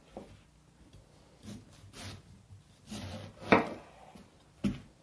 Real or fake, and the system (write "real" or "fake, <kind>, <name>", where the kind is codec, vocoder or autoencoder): real